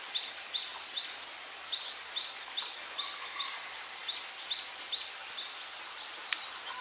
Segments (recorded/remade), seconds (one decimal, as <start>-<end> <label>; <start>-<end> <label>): 0.0-6.8 recorded